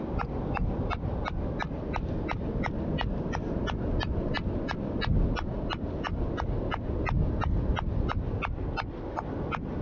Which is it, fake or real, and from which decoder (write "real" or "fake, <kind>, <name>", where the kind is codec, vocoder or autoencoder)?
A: real